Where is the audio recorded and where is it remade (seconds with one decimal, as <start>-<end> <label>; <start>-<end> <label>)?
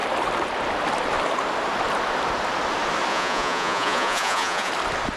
0.0-3.1 recorded; 3.1-4.7 remade; 4.7-5.2 recorded